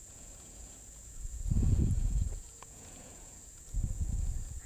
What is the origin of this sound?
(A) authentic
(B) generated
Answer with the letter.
B